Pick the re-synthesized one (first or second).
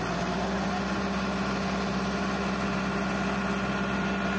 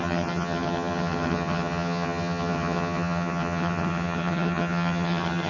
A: second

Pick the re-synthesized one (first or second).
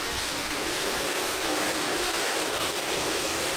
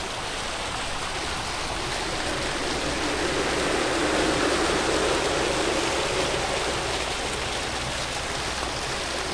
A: first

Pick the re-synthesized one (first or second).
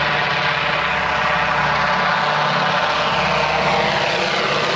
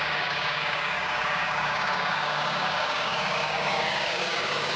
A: second